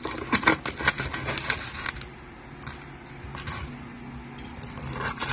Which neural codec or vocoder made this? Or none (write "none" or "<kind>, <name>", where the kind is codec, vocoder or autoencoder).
none